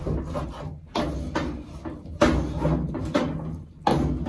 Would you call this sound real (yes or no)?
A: yes